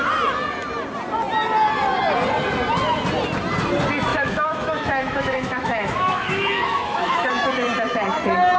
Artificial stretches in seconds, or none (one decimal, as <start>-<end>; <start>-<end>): 4.1-7.3